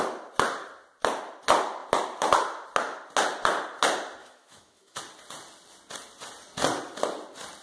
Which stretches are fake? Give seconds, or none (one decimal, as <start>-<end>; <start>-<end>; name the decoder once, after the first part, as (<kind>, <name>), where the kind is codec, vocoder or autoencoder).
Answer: 4.2-5.0 (autoencoder, DAC-VAE)